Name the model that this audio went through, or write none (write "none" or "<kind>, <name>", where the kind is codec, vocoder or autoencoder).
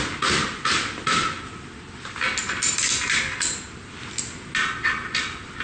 none